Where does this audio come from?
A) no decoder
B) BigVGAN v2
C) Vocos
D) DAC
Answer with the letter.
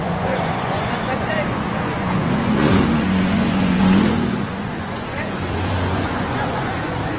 C